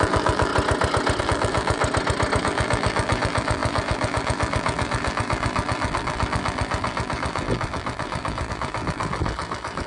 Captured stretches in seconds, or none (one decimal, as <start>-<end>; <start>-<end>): 0.5-1.2; 1.8-2.4